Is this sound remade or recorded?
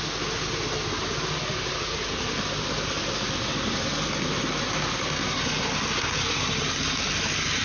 recorded